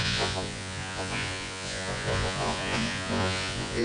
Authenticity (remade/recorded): remade